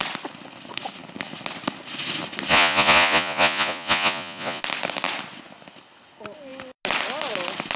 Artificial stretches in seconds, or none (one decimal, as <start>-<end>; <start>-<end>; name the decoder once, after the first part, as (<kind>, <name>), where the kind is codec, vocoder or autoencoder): 2.5-4.6 (vocoder, Vocos)